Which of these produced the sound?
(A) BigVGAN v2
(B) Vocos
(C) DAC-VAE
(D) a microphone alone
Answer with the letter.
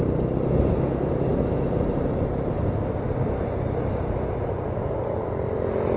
D